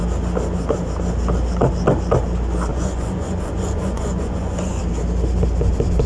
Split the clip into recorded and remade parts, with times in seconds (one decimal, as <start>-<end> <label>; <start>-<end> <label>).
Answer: 0.0-2.7 recorded; 2.7-4.8 remade; 4.8-6.1 recorded